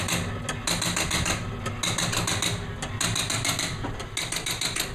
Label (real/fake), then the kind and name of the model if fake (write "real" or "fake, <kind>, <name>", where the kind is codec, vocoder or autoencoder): real